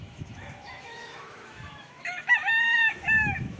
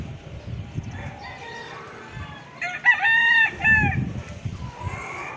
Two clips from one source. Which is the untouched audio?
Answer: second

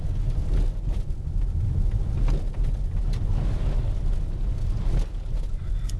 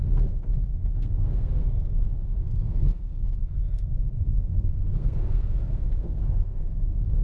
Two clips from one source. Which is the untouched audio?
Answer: first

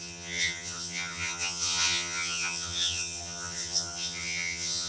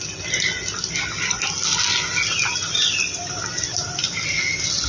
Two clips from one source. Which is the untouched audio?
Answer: second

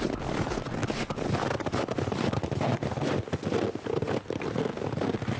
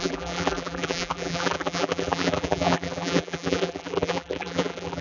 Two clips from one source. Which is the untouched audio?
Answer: first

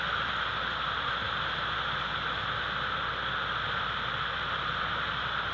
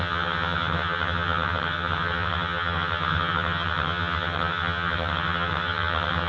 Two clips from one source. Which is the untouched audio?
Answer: first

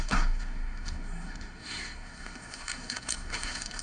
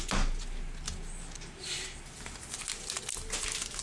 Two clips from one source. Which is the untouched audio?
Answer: second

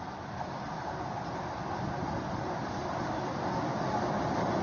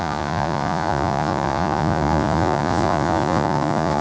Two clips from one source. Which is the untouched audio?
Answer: first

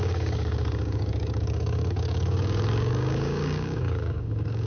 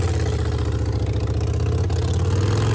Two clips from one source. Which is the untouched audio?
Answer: second